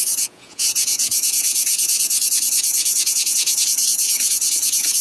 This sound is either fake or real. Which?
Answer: fake